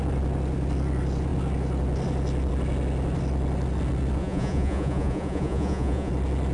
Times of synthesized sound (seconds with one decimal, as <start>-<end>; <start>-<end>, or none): 4.2-6.1